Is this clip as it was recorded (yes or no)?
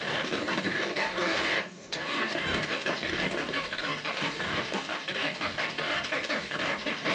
no